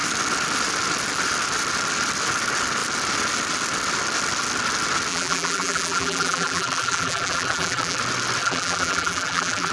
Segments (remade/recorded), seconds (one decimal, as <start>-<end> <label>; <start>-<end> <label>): 0.0-5.1 recorded; 5.1-8.0 remade; 8.0-8.4 recorded; 8.4-9.7 remade